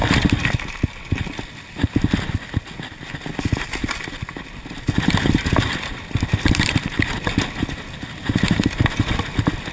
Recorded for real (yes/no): yes